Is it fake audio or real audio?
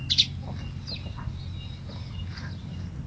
real